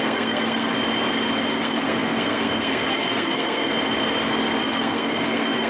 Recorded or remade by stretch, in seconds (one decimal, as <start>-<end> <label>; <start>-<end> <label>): 0.0-0.7 remade; 0.7-1.5 recorded; 1.5-3.7 remade; 3.7-4.6 recorded; 4.6-5.7 remade